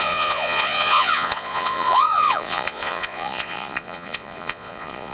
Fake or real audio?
fake